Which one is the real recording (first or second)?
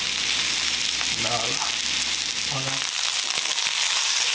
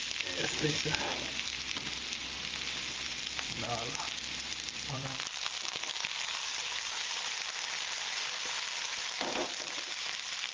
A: first